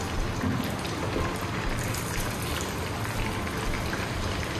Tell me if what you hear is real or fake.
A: real